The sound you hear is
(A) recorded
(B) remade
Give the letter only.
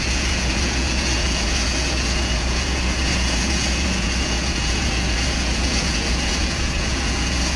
B